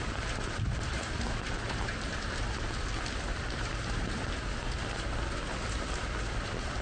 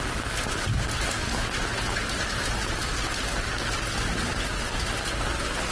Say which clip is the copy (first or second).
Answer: first